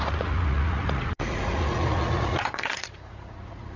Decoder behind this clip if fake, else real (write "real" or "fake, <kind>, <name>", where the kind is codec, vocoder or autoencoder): fake, vocoder, Vocos